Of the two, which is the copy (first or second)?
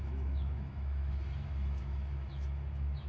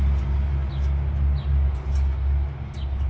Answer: first